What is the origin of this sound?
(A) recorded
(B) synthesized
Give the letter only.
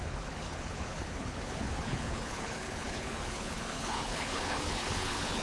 B